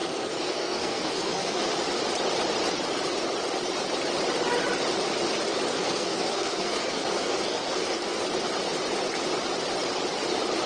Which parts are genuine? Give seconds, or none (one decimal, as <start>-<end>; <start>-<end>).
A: 1.7-5.7; 8.2-10.7